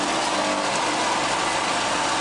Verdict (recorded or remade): recorded